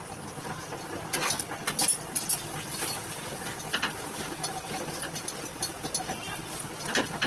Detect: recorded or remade recorded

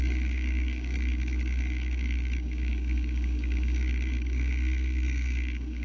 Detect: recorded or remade remade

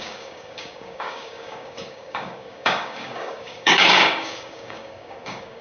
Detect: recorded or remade remade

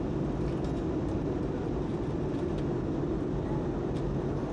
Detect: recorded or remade recorded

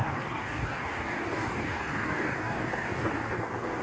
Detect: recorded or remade remade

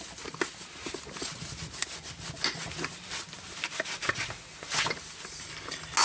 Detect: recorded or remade recorded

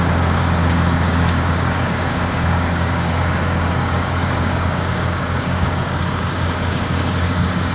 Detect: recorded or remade remade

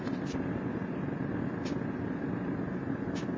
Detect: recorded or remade recorded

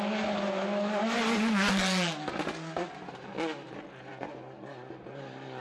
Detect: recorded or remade recorded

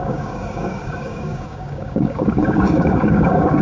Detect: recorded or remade remade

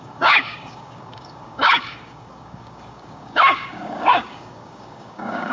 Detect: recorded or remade remade